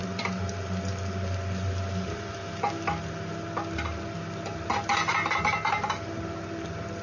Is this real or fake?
real